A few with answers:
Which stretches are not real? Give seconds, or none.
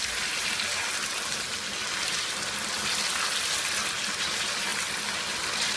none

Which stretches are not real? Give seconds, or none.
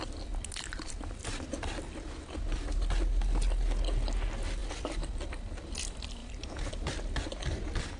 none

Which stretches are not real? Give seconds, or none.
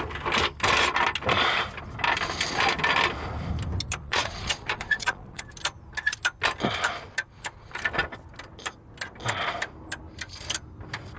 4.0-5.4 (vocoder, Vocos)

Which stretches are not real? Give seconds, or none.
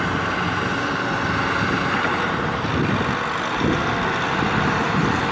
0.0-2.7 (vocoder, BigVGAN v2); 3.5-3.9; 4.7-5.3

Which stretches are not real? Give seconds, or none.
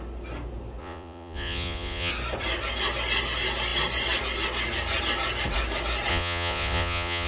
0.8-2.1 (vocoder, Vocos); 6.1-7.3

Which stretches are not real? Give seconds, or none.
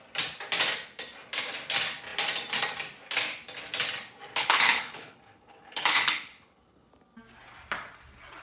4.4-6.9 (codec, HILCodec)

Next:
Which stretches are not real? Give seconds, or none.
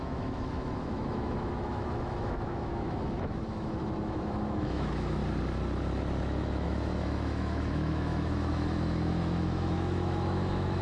0.0-5.2 (autoencoder, DAC-VAE); 6.2-10.8